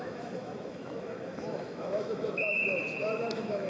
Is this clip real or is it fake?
fake